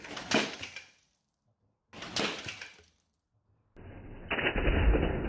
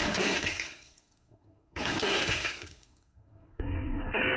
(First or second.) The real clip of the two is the first